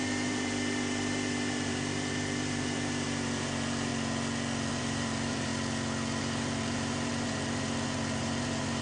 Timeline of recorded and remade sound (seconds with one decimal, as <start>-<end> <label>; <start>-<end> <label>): 0.0-3.9 remade; 3.9-4.7 recorded; 4.7-5.5 remade; 5.5-6.2 recorded; 6.2-8.8 remade